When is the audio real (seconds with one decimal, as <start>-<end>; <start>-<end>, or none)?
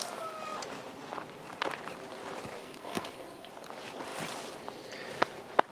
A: 0.0-2.6; 3.5-5.7